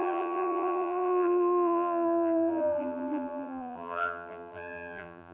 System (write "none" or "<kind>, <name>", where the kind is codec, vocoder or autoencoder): vocoder, BigVGAN v2